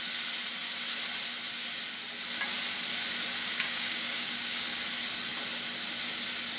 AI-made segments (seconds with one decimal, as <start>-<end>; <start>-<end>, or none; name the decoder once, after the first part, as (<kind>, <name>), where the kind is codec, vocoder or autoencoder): 3.4-4.8 (codec, DAC)